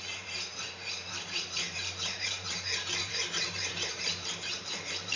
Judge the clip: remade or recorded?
remade